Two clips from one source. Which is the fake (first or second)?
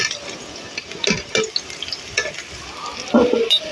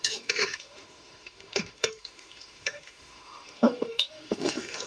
second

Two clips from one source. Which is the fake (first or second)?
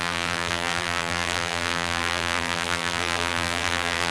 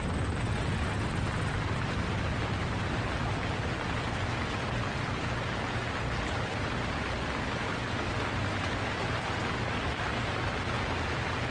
first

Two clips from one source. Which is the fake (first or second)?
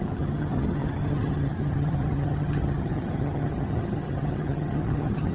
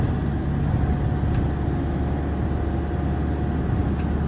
first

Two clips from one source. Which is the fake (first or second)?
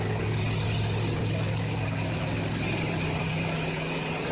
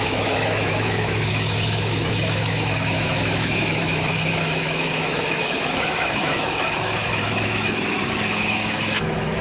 second